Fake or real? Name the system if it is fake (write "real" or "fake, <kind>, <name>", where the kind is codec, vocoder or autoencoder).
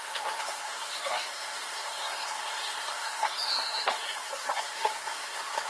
fake, codec, SNAC